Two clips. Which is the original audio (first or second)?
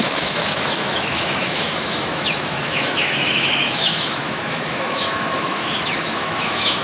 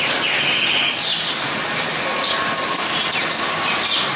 second